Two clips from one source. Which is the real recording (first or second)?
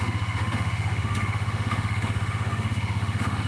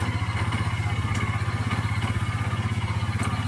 second